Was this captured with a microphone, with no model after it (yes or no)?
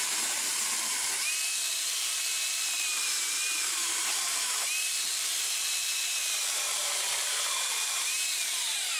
no